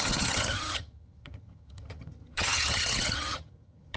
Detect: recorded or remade remade